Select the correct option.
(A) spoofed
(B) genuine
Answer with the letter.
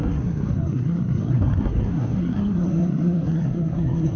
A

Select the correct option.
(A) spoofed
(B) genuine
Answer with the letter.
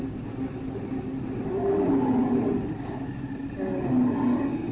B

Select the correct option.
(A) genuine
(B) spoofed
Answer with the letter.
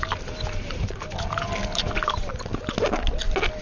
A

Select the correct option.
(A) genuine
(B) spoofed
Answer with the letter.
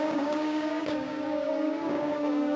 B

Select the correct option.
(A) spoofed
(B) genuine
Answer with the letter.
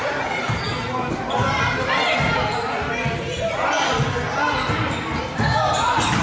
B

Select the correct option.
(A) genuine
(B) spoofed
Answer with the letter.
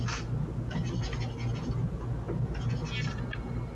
A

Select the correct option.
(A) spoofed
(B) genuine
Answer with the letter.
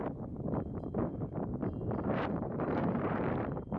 A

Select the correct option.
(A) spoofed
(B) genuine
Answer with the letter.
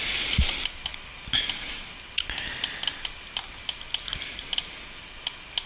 B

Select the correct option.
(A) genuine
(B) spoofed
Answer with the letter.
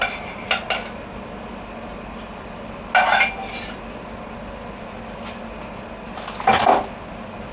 A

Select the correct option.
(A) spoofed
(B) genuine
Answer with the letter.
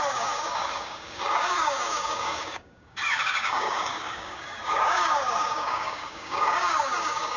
A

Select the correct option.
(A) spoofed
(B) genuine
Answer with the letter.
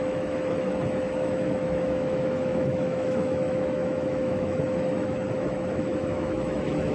A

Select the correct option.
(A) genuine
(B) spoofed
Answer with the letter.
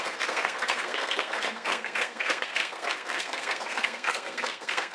B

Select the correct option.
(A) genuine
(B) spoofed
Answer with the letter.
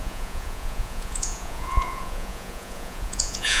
B